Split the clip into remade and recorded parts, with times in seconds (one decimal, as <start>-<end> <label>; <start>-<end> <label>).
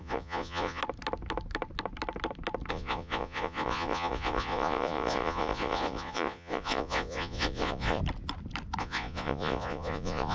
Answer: 0.0-0.8 remade; 0.8-2.7 recorded; 2.7-8.0 remade; 8.0-8.8 recorded; 8.8-10.3 remade